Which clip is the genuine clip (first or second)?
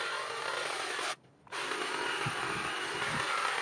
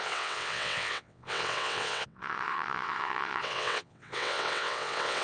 first